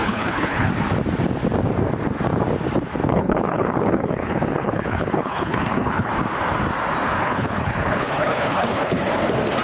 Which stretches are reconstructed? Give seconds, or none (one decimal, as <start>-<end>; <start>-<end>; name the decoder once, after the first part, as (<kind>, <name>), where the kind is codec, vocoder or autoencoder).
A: 0.0-0.7 (codec, HILCodec); 3.1-6.1; 7.2-9.1